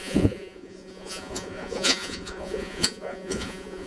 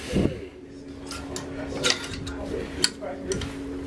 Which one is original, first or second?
second